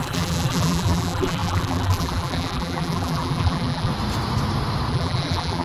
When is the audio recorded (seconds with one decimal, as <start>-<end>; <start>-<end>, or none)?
3.9-4.9